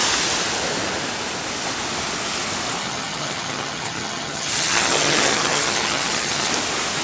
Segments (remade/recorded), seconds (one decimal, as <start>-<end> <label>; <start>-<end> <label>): 0.0-2.8 recorded; 2.8-6.5 remade; 6.5-7.0 recorded